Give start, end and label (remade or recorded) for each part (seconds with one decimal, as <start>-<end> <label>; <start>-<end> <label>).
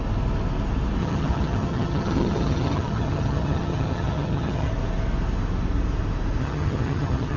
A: 0.0-1.0 recorded; 1.0-4.7 remade; 4.7-6.4 recorded; 6.4-7.4 remade